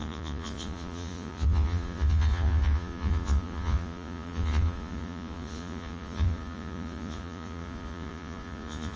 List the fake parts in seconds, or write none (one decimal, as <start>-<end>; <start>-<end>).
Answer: 0.0-9.0